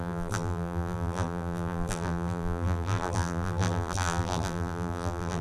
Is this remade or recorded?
remade